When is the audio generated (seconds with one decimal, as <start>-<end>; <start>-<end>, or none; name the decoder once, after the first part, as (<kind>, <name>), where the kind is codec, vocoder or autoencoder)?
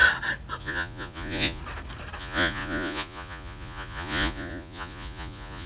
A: 0.6-1.6 (vocoder, Vocos); 2.2-5.7